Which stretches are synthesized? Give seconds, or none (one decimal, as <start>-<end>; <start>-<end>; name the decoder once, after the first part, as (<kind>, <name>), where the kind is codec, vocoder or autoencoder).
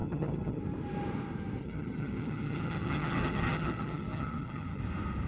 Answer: 0.0-0.6 (vocoder, HiFi-GAN); 1.6-4.8